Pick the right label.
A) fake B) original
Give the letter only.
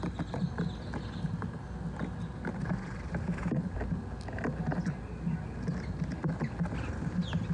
B